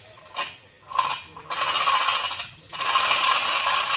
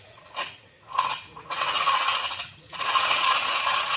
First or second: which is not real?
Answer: second